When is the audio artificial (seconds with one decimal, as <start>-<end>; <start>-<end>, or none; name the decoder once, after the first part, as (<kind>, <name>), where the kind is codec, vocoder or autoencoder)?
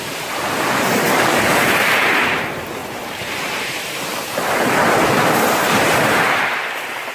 0.0-7.1 (vocoder, BigVGAN v2)